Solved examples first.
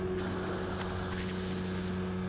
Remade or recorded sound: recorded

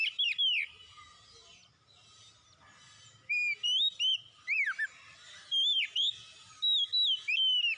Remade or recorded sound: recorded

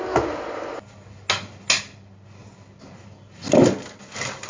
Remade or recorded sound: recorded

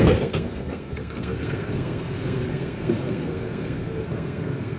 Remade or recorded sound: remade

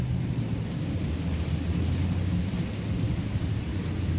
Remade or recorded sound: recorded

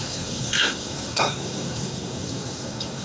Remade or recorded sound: remade